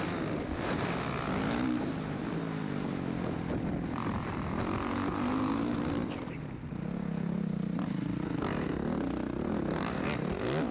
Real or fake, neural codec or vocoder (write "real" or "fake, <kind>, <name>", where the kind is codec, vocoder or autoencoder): real